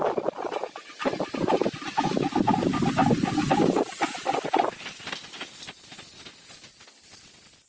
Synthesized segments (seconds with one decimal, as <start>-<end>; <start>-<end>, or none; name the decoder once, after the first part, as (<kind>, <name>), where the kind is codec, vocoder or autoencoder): none

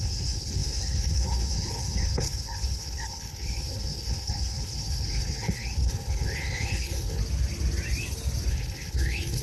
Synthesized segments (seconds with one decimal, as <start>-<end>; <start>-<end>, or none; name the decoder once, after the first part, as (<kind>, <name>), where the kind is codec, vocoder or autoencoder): 0.0-7.2 (codec, HILCodec); 8.5-9.4